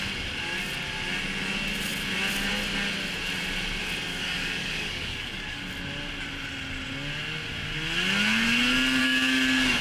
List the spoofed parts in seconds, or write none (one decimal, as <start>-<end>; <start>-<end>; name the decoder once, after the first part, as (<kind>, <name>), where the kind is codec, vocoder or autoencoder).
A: 4.1-5.6 (codec, DAC); 9.0-9.8